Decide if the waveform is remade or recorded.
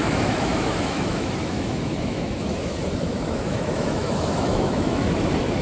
remade